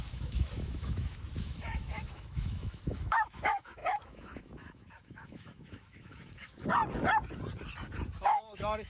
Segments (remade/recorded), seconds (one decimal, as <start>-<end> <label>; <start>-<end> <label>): 0.0-6.7 remade; 6.7-8.2 recorded; 8.2-8.9 remade